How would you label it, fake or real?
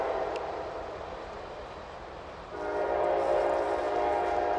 real